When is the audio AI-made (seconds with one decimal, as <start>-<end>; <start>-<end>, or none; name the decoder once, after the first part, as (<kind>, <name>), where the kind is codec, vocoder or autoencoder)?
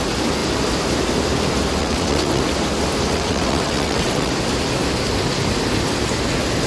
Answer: 1.8-2.4 (vocoder, WaveNeXt); 3.1-4.3